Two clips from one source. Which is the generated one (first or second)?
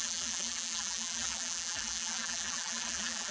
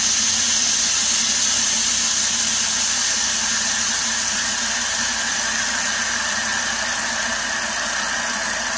first